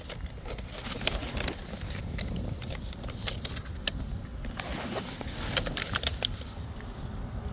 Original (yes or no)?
yes